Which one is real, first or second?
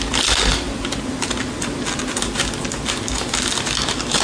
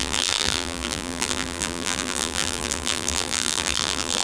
first